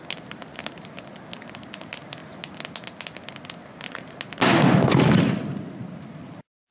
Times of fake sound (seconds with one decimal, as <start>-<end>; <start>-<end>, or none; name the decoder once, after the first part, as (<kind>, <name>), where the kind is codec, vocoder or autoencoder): none

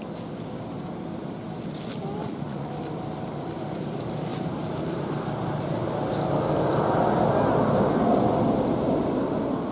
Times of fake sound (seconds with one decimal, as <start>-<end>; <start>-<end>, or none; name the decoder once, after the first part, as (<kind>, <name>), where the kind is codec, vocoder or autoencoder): 2.2-2.7 (vocoder, Vocos)

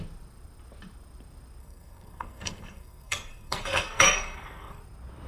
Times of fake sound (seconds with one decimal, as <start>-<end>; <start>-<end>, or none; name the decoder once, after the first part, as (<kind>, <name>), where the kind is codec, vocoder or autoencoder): 1.6-4.8 (codec, SNAC)

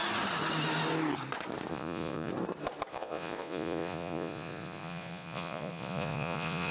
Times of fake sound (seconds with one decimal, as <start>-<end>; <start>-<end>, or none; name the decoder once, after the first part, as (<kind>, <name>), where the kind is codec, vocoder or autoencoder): 1.7-2.3 (vocoder, Vocos); 2.9-6.7

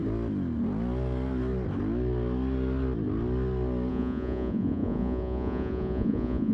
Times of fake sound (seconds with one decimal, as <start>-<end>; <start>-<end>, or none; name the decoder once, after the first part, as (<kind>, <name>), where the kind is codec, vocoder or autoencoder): 3.9-6.5 (vocoder, Vocos)